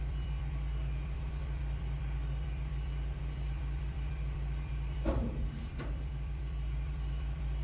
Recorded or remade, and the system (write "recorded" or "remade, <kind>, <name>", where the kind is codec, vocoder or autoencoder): remade, vocoder, BigVGAN v2